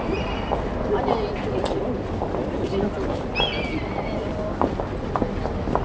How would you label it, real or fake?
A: real